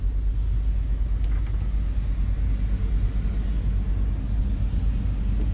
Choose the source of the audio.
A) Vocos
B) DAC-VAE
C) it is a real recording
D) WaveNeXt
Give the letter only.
C